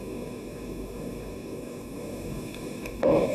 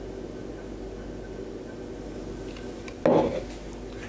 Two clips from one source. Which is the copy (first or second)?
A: first